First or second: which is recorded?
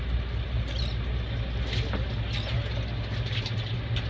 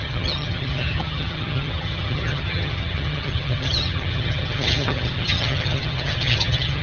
first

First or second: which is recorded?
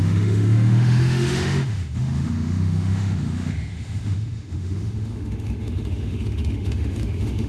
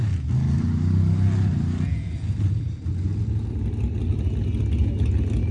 second